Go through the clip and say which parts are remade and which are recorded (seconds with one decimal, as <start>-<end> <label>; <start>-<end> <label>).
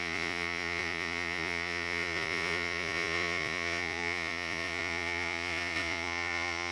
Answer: 0.0-6.7 remade